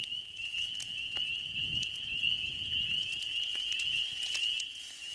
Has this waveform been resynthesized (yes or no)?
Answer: yes